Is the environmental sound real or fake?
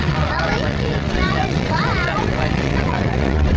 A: fake